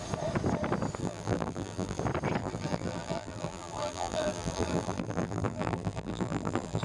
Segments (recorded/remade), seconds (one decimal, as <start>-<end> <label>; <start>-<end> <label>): 0.0-1.0 recorded; 1.0-2.0 remade; 2.0-2.4 recorded; 2.4-6.8 remade